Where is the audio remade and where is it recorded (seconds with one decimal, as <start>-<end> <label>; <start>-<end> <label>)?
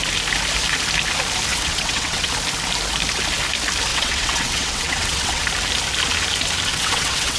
0.0-1.5 recorded; 1.5-2.3 remade; 2.3-3.9 recorded; 3.9-5.4 remade; 5.4-6.7 recorded; 6.7-7.4 remade